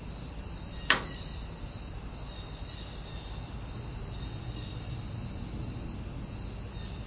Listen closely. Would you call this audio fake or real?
real